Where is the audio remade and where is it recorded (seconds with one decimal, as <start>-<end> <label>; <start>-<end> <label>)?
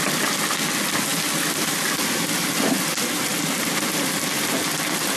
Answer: 0.0-5.2 recorded